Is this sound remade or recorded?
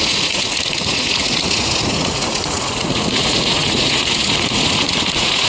remade